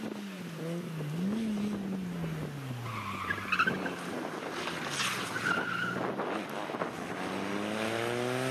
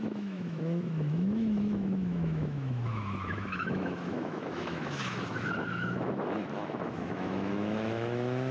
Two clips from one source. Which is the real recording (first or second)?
first